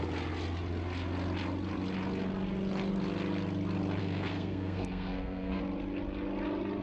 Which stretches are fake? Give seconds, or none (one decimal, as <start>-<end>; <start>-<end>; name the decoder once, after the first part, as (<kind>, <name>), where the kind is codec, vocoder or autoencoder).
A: 4.0-5.6 (codec, SNAC)